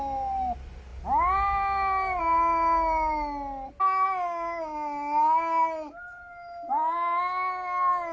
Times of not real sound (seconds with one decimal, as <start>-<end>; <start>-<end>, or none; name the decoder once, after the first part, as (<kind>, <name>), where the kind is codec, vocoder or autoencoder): none